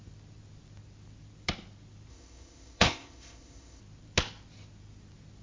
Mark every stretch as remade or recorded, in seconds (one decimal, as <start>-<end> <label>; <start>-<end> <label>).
0.0-2.1 recorded; 2.1-3.8 remade; 3.8-5.4 recorded